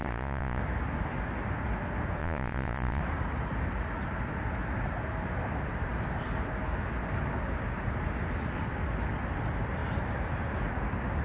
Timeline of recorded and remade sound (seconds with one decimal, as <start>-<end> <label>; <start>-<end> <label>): 0.0-0.6 remade; 0.6-2.2 recorded; 2.2-3.0 remade; 3.0-11.2 recorded